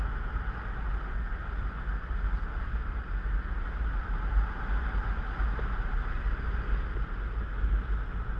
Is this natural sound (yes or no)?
yes